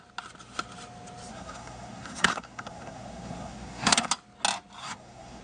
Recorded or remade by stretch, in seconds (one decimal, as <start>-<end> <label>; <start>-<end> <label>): 0.0-1.3 recorded; 1.3-4.1 remade; 4.1-4.8 recorded; 4.8-5.4 remade